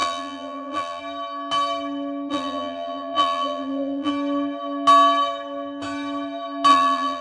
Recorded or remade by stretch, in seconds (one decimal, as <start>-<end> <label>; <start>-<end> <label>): 0.0-1.0 remade; 1.0-2.3 recorded; 2.3-4.1 remade; 4.1-6.7 recorded; 6.7-7.2 remade